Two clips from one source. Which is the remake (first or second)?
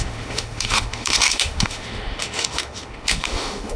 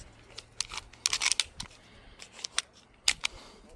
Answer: first